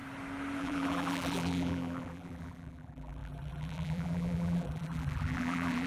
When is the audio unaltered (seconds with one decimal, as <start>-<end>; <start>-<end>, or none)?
0.0-0.6